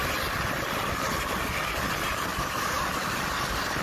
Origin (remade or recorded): recorded